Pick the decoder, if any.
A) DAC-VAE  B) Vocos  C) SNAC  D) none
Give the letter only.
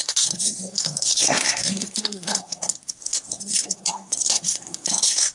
C